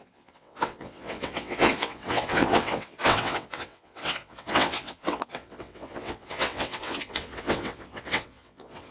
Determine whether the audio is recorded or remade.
remade